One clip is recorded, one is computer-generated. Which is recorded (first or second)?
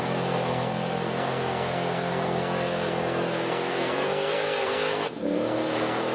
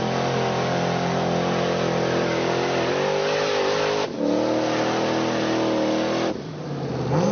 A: second